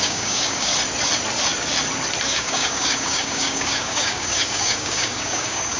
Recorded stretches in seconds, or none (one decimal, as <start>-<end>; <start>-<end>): 0.7-2.3